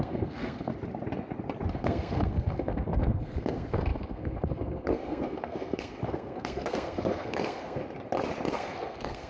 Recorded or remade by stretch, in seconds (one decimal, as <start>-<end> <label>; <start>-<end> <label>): 0.0-0.7 remade; 0.7-1.7 recorded; 1.7-7.8 remade; 7.8-8.5 recorded; 8.5-9.3 remade